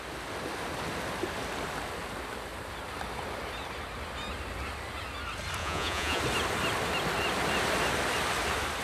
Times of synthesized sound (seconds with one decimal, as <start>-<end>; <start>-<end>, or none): 5.6-6.2